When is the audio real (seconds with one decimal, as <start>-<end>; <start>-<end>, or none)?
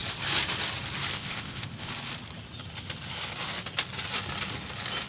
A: 0.0-1.1; 1.9-5.1